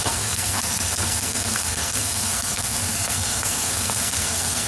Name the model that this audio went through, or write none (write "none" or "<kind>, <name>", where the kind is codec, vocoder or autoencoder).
codec, SNAC